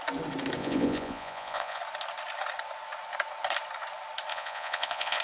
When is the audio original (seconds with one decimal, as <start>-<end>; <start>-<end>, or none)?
0.0-0.6; 1.8-4.3